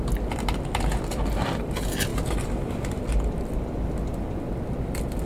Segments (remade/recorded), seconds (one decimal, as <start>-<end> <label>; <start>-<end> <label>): 0.0-5.3 recorded